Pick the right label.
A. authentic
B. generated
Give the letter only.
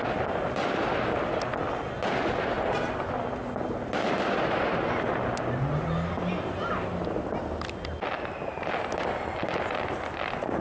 A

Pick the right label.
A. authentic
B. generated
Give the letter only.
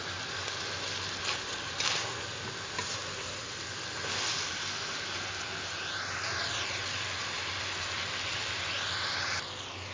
A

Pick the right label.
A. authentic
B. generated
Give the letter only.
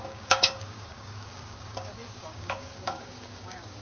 B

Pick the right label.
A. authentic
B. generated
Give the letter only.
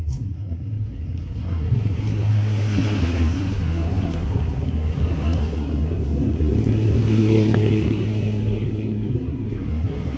B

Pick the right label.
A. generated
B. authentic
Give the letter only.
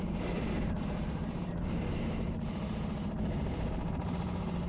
A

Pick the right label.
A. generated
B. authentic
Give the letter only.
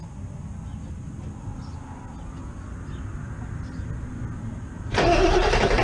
B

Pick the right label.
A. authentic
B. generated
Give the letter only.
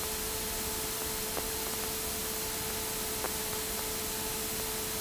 A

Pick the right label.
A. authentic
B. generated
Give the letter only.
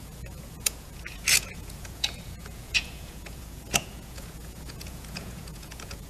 B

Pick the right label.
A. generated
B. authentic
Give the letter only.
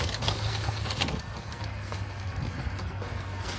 A